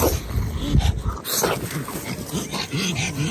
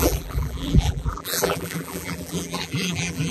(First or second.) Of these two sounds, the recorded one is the first